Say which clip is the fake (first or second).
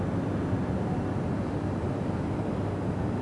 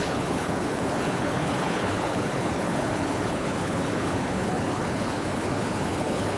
second